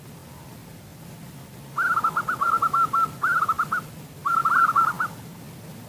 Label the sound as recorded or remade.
remade